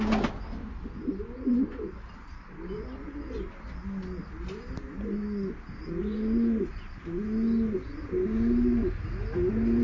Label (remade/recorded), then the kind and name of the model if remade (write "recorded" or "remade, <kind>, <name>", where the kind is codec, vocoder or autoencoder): recorded